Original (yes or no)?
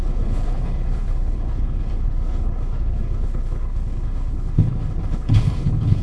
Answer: no